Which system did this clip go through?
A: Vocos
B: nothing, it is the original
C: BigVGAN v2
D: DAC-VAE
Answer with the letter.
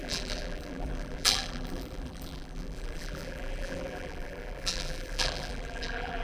C